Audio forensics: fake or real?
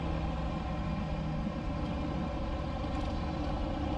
real